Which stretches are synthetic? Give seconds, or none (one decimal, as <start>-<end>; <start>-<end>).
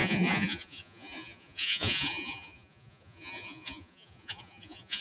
0.0-5.0